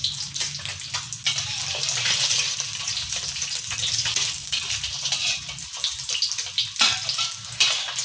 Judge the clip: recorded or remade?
recorded